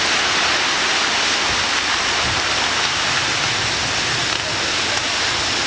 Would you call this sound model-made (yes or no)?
no